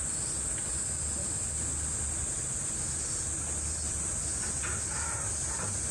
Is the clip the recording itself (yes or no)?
yes